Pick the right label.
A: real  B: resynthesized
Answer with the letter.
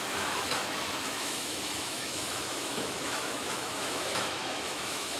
B